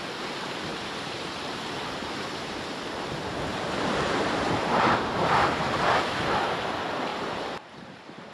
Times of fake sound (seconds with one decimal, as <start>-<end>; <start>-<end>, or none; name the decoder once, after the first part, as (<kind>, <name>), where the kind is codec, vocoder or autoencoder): 0.7-2.1 (vocoder, BigVGAN v2); 3.5-6.1; 7.1-8.3